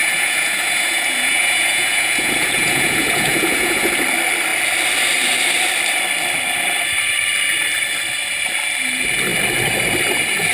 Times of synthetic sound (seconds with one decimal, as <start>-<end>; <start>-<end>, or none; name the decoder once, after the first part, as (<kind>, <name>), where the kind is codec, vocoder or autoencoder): 0.0-3.9 (vocoder, Vocos)